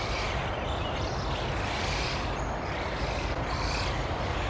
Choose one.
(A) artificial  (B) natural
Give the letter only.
A